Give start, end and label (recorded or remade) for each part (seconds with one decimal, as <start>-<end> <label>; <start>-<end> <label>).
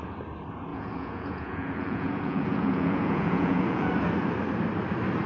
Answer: 0.0-0.7 recorded; 0.7-3.9 remade; 3.9-5.3 recorded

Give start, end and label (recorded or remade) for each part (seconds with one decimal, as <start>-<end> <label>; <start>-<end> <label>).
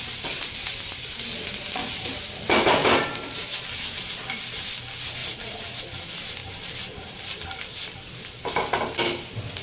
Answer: 0.0-1.8 recorded; 1.8-4.4 remade; 4.4-5.2 recorded; 5.2-5.8 remade; 5.8-6.4 recorded; 6.4-8.2 remade; 8.2-9.6 recorded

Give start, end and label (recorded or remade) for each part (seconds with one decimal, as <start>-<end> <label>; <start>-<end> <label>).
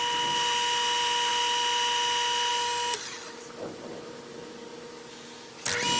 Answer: 0.0-6.0 recorded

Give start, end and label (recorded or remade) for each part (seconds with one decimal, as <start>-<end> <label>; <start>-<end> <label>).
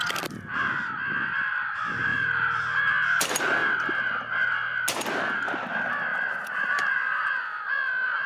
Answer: 0.0-2.1 recorded; 2.1-2.6 remade; 2.6-6.1 recorded; 6.1-7.9 remade; 7.9-8.3 recorded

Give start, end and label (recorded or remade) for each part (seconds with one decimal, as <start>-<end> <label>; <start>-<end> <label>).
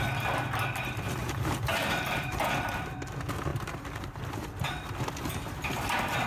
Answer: 0.0-1.2 recorded; 1.2-2.4 remade; 2.4-3.5 recorded; 3.5-4.2 remade; 4.2-6.3 recorded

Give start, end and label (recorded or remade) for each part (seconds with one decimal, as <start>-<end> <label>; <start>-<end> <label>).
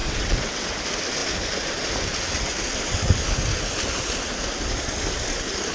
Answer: 0.0-0.7 remade; 0.7-5.7 recorded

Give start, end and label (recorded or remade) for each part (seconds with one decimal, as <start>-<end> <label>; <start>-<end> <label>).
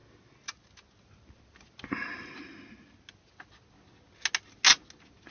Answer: 0.0-5.3 recorded